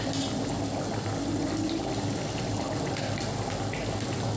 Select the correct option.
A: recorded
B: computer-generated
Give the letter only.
A